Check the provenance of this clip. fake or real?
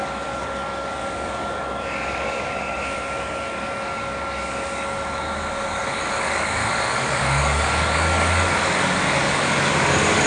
fake